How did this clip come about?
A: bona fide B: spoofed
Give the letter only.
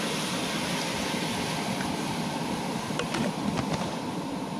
B